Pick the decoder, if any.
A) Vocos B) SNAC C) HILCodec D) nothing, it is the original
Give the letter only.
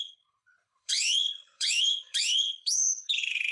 C